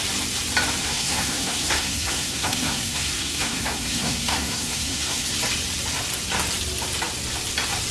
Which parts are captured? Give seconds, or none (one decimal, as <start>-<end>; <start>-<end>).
0.0-0.8; 5.3-7.9